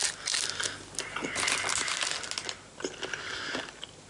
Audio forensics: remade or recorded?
recorded